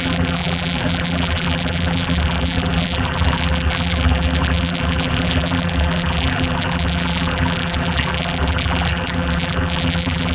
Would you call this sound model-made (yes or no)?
yes